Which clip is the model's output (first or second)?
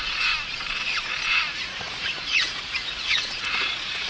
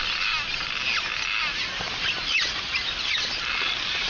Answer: first